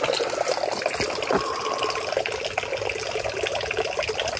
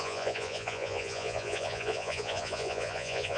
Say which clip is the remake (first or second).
second